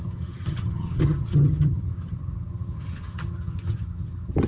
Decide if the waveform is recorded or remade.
remade